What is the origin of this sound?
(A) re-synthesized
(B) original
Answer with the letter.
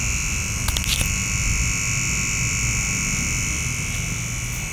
B